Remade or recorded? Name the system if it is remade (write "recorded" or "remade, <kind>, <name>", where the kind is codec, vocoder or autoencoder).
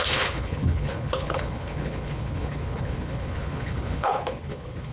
remade, codec, HILCodec